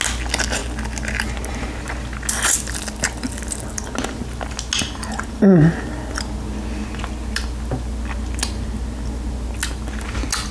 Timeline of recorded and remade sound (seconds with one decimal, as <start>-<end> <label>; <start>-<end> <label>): 0.0-10.5 recorded